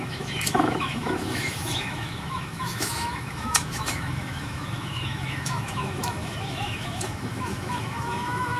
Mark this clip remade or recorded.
remade